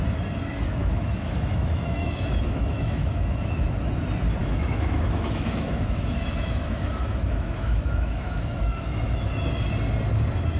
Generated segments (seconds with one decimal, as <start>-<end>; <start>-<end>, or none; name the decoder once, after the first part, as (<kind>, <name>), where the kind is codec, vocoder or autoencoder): 0.8-3.6 (autoencoder, DAC-VAE); 4.4-9.3